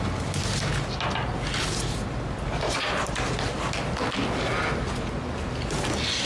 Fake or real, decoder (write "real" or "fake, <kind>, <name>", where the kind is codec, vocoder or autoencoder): real